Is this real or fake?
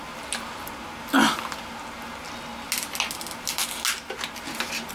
real